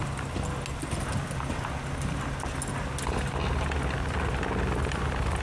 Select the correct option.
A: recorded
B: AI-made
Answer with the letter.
A